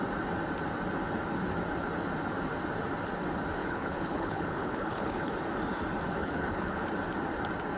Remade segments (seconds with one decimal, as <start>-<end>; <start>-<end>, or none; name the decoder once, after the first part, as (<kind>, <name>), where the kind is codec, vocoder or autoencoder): 3.6-5.3 (codec, HILCodec); 6.2-6.9